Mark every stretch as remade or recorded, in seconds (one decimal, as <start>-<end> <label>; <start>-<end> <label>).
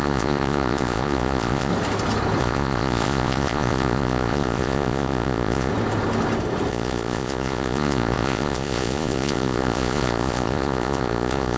0.0-1.7 remade; 1.7-2.4 recorded; 2.4-5.7 remade; 5.7-6.7 recorded; 6.7-11.6 remade